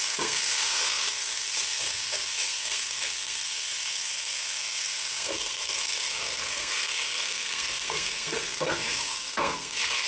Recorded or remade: remade